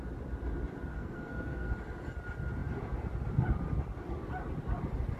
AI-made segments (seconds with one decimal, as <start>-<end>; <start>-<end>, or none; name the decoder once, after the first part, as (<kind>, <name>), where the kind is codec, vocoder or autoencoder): 0.9-1.7 (codec, SNAC)